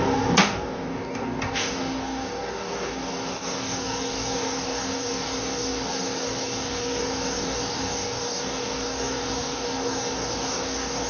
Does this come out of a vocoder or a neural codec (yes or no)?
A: yes